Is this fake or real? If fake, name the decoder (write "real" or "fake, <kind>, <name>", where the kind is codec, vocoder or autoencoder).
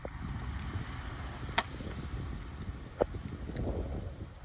real